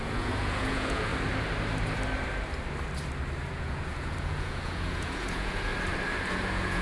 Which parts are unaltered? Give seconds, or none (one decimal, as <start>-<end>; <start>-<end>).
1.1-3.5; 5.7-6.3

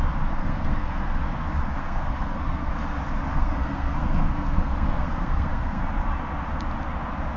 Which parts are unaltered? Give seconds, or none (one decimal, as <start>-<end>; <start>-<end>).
0.0-0.4; 1.0-1.7; 2.7-3.3; 5.8-7.4

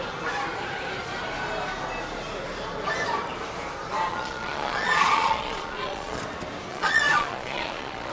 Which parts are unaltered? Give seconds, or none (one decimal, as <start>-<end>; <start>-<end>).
0.0-4.1; 6.2-6.7

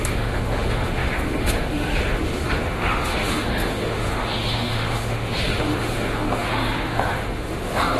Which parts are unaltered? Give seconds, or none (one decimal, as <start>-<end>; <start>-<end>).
none

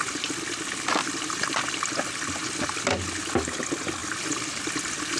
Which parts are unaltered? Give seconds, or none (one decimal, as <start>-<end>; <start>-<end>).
0.0-5.2

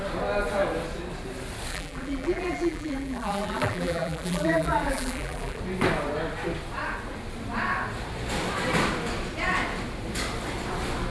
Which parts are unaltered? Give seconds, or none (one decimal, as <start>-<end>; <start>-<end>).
0.0-1.7; 5.6-11.1

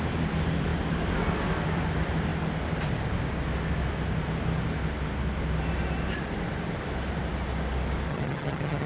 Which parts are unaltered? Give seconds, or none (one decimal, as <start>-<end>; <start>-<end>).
0.0-8.1